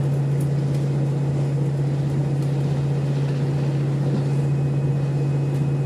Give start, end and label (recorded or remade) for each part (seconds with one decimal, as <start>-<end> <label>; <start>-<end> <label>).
0.0-5.9 recorded